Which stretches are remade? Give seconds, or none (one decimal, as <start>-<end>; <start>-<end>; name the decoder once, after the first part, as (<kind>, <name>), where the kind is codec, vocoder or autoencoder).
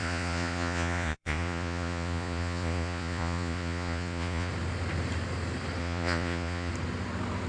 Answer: 0.0-4.5 (vocoder, Vocos); 5.8-6.7